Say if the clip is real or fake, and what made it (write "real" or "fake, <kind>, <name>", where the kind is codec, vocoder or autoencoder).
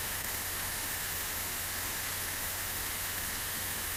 fake, autoencoder, DAC-VAE